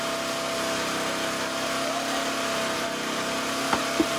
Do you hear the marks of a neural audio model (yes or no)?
no